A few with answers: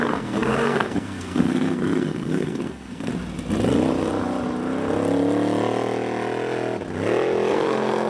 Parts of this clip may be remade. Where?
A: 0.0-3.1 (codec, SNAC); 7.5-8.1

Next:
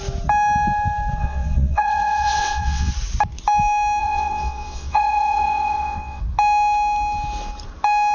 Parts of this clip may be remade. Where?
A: 1.2-2.9 (vocoder, WaveNeXt); 4.0-6.2

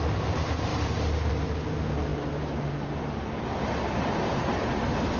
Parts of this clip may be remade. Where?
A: none

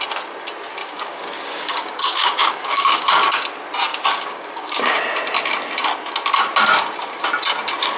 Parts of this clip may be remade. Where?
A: 0.8-3.1 (codec, DAC); 3.9-5.0

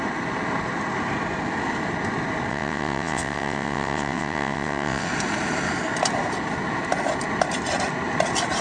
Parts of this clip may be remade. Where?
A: 2.5-5.1 (vocoder, WaveNeXt)

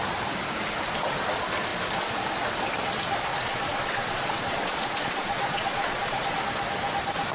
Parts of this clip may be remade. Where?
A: 3.3-6.4 (vocoder, Vocos)

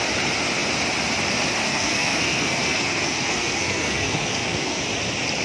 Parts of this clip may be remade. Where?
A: 1.6-4.8 (codec, SNAC)